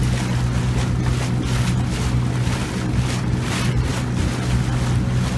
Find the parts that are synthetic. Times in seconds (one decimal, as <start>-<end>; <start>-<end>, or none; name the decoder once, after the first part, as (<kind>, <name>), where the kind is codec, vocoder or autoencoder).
none